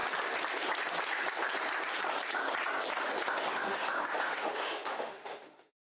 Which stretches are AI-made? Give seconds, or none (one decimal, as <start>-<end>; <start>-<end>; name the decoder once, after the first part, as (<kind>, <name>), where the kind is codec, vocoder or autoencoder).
3.5-5.8 (autoencoder, DAC-VAE)